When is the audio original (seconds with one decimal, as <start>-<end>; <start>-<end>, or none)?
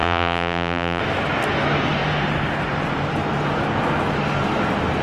1.0-5.0